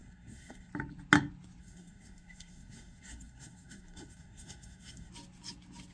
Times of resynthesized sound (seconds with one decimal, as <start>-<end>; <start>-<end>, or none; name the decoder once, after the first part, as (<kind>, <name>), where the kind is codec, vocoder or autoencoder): 0.0-0.7 (codec, SNAC); 1.6-5.1